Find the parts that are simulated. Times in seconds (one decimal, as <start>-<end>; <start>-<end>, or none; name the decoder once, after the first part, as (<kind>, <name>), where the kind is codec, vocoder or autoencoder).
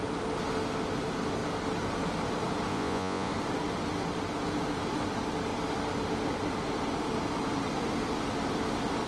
2.7-3.3 (vocoder, Vocos)